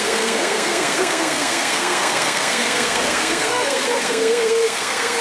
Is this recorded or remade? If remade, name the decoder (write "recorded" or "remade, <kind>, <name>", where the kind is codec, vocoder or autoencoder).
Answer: remade, codec, SNAC